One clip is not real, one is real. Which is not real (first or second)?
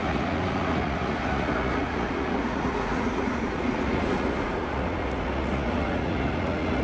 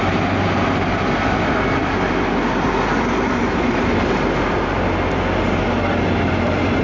first